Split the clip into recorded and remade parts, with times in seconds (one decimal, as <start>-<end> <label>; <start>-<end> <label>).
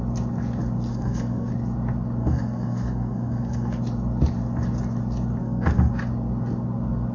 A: 0.0-0.9 recorded; 0.9-1.5 remade; 1.5-2.2 recorded; 2.2-3.8 remade; 3.8-5.4 recorded; 5.4-5.9 remade; 5.9-7.1 recorded